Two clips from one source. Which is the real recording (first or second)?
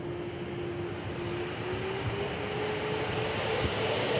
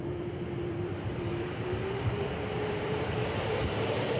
first